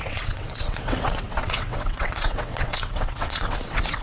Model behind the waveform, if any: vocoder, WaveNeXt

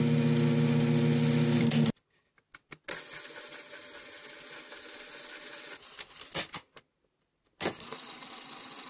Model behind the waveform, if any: none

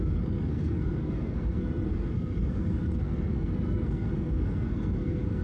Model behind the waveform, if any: codec, SNAC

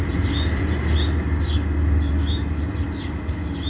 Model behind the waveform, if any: none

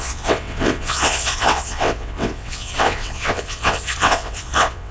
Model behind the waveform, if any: vocoder, WaveNeXt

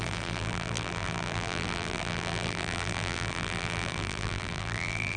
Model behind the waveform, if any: vocoder, BigVGAN v2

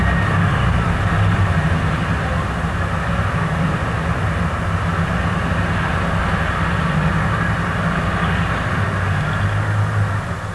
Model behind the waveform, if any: none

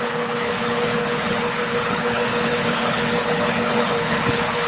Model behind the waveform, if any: codec, HILCodec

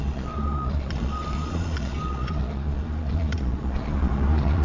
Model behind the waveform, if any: vocoder, Vocos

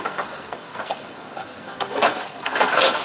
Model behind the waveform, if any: codec, SNAC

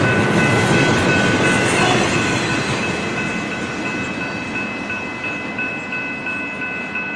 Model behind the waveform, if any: none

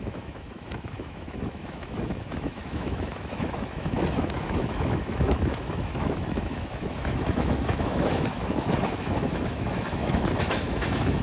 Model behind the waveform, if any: autoencoder, DAC-VAE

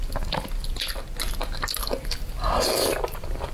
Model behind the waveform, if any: none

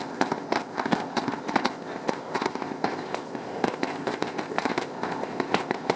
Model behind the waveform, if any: codec, ZipCodec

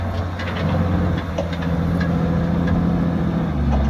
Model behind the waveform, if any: none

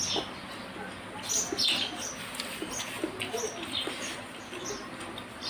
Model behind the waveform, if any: none